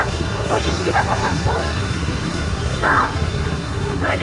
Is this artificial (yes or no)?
yes